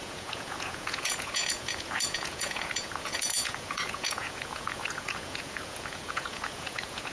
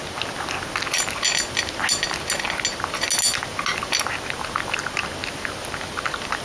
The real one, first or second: second